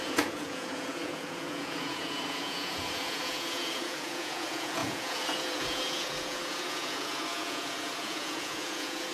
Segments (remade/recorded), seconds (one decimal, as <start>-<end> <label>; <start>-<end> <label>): 0.0-9.1 remade